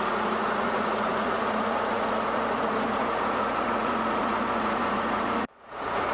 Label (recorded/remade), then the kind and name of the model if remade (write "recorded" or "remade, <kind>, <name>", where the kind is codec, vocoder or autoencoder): remade, vocoder, Vocos